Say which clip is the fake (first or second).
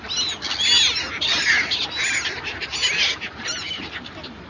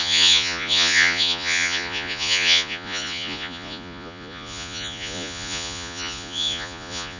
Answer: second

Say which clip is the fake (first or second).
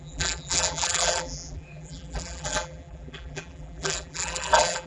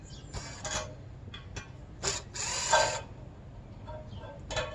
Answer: first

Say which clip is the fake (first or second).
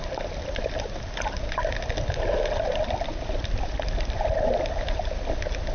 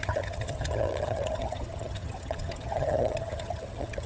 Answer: second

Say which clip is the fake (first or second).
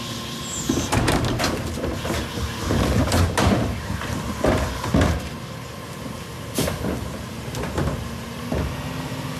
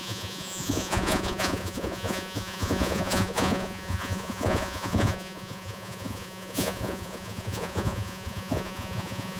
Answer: second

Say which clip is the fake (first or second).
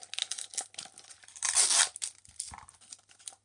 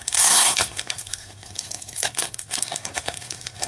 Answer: second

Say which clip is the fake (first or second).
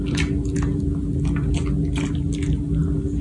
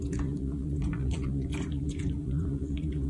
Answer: second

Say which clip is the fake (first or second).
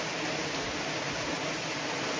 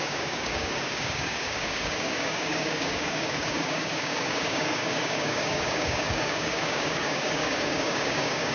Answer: second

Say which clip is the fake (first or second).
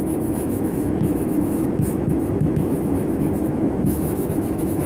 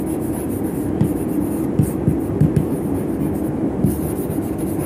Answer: first